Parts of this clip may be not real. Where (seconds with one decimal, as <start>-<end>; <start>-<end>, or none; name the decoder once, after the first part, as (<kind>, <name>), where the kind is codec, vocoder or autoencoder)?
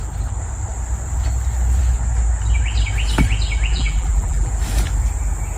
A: 3.7-4.5 (vocoder, BigVGAN v2)